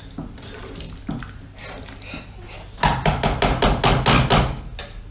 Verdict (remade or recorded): recorded